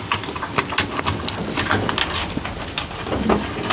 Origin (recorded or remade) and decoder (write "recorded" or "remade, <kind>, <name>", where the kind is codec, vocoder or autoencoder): recorded